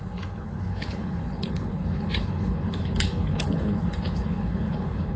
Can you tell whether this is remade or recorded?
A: remade